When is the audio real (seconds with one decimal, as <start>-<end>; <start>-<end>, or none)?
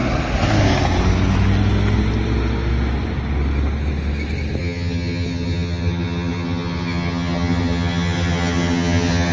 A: 0.0-4.6